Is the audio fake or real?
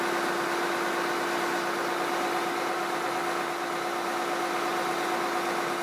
real